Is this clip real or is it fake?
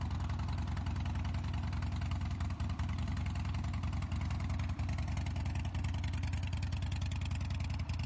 real